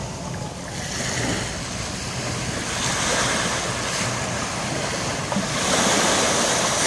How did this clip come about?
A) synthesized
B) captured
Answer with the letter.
B